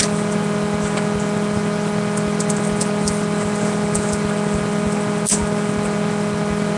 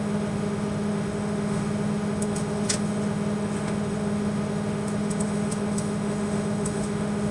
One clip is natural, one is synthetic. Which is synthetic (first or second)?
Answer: second